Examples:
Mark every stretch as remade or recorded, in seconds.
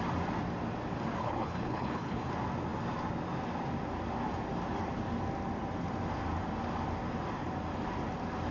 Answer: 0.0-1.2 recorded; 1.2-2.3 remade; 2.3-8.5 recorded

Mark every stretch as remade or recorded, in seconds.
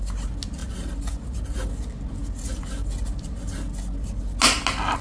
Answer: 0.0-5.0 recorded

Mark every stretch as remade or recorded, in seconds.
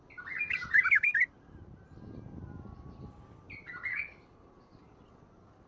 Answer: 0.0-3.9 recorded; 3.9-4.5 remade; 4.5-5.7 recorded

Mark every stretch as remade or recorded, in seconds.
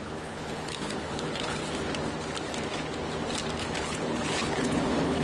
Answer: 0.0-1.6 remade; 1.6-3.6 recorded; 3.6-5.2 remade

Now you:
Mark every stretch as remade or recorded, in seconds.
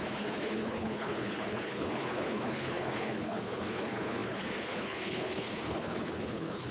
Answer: 0.0-6.7 remade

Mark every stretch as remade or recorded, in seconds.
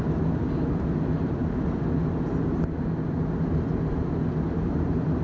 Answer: 0.0-5.2 recorded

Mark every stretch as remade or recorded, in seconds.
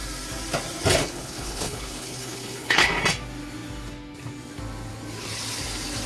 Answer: 0.0-1.0 recorded; 1.0-2.9 remade; 2.9-6.1 recorded